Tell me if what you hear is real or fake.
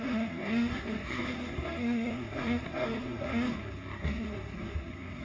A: fake